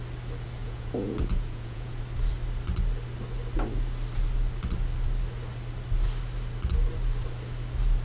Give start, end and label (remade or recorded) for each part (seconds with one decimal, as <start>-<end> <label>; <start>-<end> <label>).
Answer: 0.0-0.6 recorded; 0.6-2.0 remade; 2.0-8.0 recorded